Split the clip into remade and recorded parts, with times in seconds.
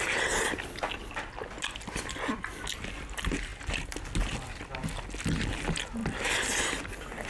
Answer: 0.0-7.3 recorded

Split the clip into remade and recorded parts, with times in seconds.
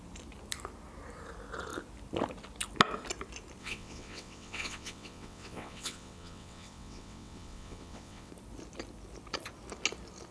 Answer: 0.0-3.6 recorded; 3.6-8.3 remade; 8.3-10.3 recorded